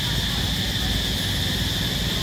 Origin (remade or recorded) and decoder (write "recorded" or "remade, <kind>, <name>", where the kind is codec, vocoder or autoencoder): recorded